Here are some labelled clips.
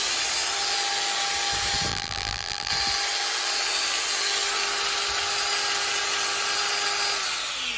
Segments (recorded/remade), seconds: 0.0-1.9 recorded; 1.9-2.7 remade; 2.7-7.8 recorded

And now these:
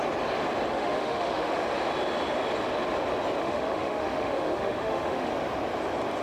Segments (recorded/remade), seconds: 0.0-0.7 recorded; 0.7-1.6 remade; 1.6-3.4 recorded; 3.4-5.3 remade; 5.3-6.2 recorded